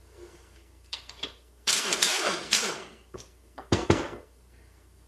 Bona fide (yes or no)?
no